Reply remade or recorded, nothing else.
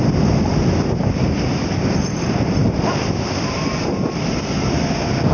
recorded